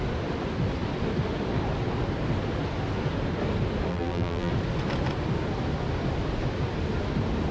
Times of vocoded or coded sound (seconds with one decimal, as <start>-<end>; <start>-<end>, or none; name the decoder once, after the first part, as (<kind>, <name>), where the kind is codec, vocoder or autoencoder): 3.9-4.5 (vocoder, BigVGAN v2)